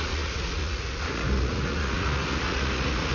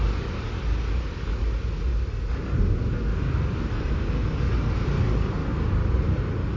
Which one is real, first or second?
second